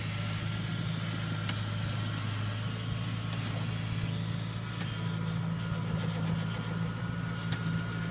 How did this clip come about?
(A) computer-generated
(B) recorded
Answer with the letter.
B